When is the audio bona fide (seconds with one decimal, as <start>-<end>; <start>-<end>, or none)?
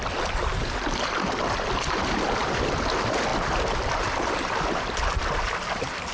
0.0-6.1